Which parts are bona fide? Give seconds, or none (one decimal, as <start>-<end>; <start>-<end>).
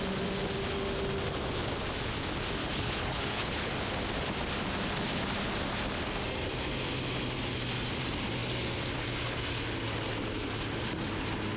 0.0-2.6; 3.7-11.6